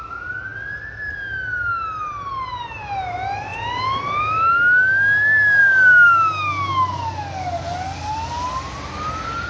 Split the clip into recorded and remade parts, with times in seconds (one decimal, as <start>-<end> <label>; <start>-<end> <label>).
0.0-5.6 recorded; 5.6-6.5 remade; 6.5-9.5 recorded